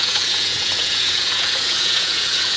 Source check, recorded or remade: remade